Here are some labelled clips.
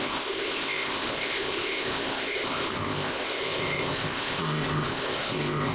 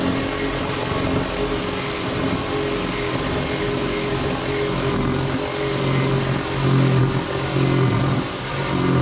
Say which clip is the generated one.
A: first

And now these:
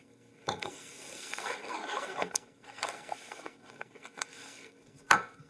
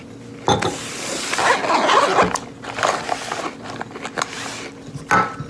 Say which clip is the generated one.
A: first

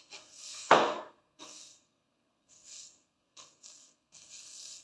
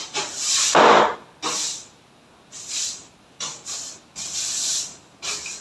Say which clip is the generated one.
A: first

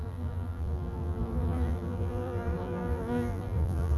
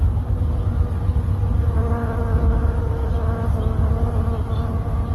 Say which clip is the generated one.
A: first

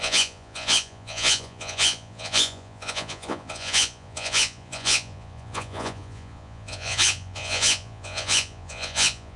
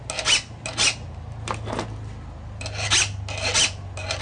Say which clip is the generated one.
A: first